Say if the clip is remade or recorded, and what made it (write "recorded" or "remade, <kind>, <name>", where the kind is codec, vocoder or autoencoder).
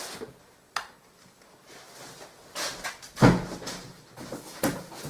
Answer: recorded